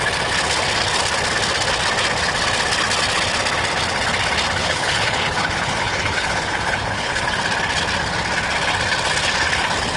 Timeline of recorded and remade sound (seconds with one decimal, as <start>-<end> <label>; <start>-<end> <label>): 0.0-4.6 recorded; 4.6-7.3 remade; 7.3-10.0 recorded